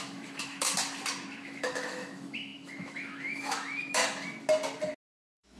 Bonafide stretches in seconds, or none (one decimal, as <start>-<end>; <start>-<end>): 0.7-1.3; 4.0-5.1